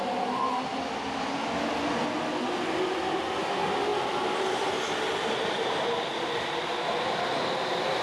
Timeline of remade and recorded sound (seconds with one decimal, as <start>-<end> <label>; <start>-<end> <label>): 0.0-0.7 recorded; 0.7-1.3 remade; 1.3-3.9 recorded; 3.9-7.5 remade; 7.5-8.0 recorded